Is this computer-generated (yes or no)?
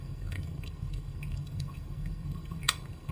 yes